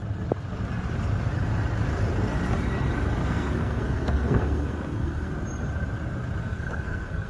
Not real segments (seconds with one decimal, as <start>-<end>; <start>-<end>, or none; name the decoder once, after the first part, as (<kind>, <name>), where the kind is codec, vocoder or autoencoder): 3.2-5.3 (codec, SNAC); 6.4-7.3